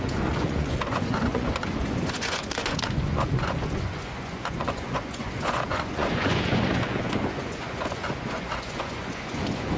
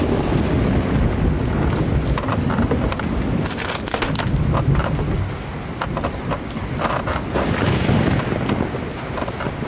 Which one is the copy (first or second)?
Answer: first